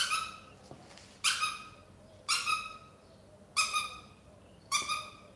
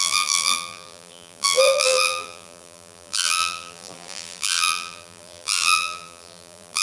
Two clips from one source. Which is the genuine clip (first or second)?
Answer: first